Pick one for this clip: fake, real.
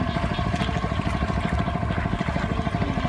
real